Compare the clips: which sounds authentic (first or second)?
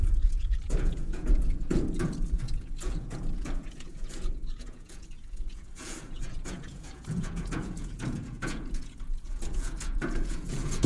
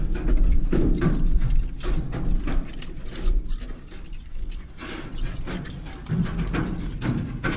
second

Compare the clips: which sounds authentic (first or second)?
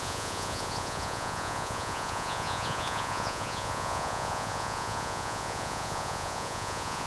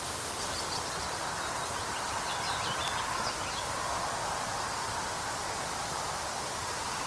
second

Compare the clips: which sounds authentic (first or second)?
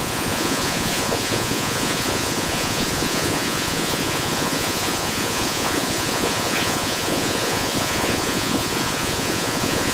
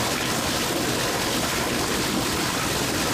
second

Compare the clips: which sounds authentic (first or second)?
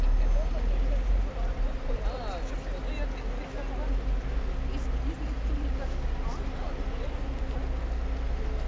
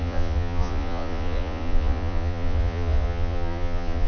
first